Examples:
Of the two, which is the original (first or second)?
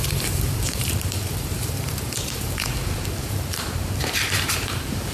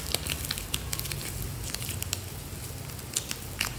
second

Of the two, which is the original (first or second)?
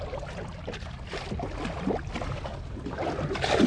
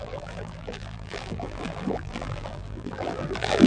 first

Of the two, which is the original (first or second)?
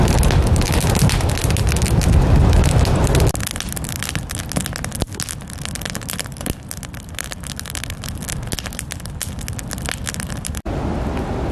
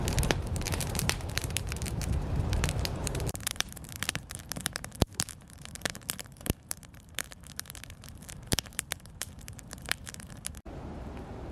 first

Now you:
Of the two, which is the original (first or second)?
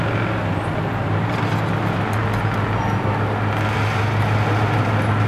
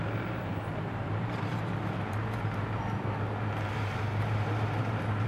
first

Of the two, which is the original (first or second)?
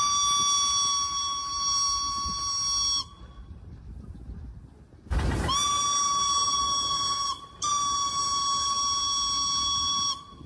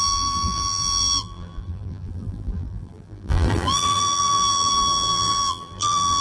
first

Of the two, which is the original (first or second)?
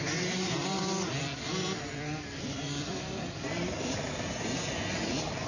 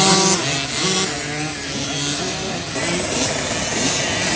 second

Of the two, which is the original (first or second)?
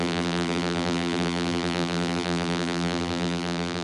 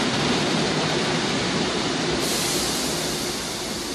second